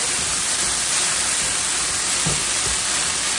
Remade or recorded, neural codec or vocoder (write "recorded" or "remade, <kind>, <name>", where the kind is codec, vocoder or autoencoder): recorded